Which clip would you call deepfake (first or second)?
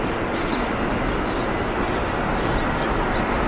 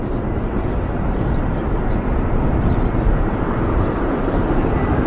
second